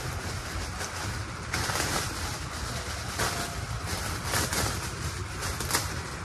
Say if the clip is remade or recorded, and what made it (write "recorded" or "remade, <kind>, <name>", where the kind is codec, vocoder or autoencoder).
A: recorded